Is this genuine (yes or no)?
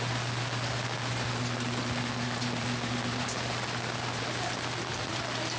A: yes